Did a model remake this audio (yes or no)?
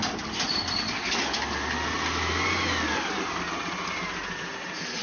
no